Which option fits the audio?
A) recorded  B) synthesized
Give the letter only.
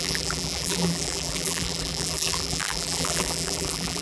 B